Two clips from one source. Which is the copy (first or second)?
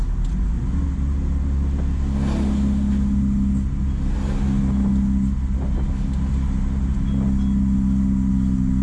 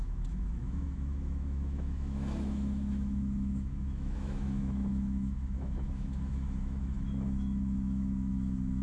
second